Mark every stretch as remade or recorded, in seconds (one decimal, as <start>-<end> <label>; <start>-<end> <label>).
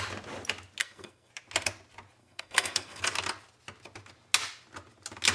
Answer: 0.0-0.8 recorded; 0.8-1.3 remade; 1.3-2.2 recorded; 2.2-3.0 remade; 3.0-5.3 recorded